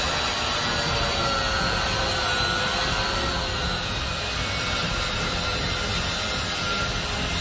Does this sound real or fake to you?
real